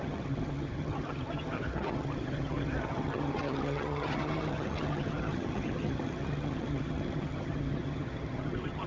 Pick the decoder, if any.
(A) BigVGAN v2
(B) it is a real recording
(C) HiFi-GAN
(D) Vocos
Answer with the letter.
C